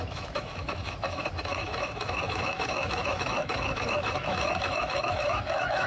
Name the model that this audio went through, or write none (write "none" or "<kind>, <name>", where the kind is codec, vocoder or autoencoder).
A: autoencoder, DAC-VAE